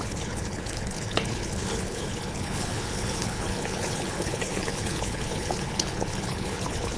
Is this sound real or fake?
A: fake